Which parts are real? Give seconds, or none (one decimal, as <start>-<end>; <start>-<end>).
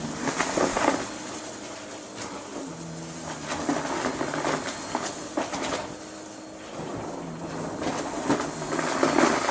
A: 0.0-9.5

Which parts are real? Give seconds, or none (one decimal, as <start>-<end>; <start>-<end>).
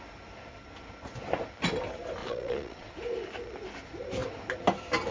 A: 0.0-2.2; 2.9-5.1